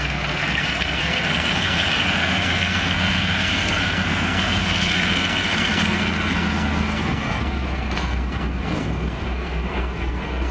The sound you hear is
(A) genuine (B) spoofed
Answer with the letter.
B